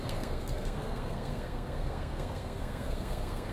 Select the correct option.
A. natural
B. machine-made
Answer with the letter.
B